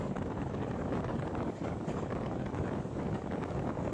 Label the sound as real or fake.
fake